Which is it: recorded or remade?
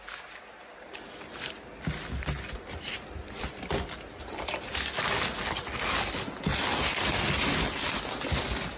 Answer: recorded